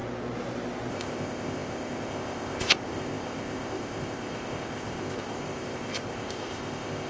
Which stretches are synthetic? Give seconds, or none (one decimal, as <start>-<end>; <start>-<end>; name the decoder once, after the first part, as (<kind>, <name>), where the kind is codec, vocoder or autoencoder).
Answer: 0.9-7.1 (codec, ZipCodec)

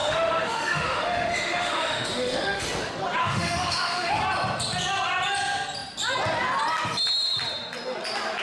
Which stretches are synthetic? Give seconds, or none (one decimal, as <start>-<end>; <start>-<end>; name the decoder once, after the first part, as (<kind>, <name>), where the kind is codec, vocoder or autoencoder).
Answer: 0.0-2.6 (autoencoder, DAC-VAE); 3.2-4.2

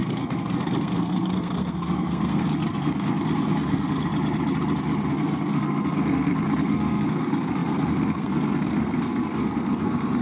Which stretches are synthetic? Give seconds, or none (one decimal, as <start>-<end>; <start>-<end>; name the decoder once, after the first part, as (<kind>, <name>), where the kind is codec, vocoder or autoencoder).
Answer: 0.0-4.1 (codec, SNAC); 5.1-10.2